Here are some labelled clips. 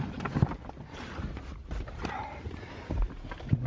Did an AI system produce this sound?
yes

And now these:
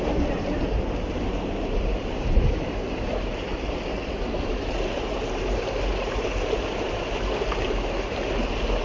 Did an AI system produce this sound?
yes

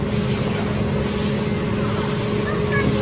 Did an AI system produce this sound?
no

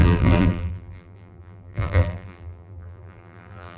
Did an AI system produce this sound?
yes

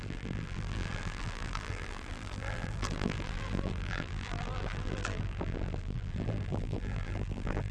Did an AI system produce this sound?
yes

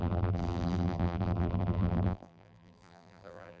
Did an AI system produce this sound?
yes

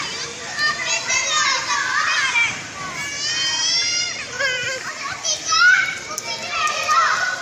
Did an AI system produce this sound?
yes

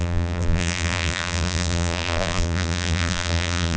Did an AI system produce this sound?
yes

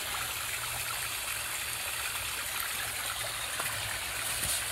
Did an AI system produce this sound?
no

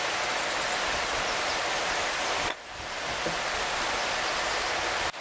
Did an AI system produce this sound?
no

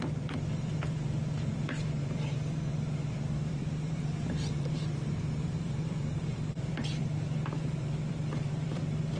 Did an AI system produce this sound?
yes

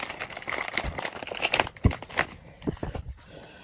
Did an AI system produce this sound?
no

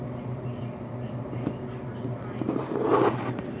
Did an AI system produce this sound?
no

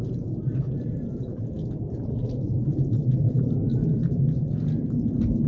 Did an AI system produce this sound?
yes